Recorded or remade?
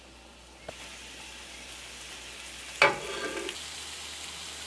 recorded